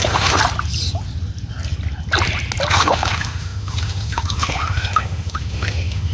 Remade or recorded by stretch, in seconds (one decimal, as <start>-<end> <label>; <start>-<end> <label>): 0.0-0.4 remade; 0.4-2.7 recorded; 2.7-6.1 remade